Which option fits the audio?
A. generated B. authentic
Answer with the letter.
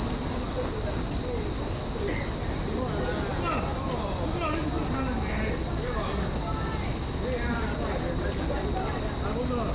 B